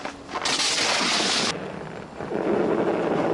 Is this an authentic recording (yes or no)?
yes